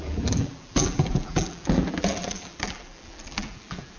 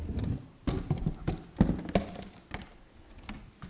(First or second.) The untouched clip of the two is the second